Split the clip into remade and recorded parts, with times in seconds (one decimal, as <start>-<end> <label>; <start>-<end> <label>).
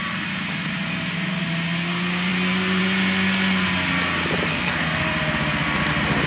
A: 0.0-4.5 recorded; 4.5-5.1 remade; 5.1-6.3 recorded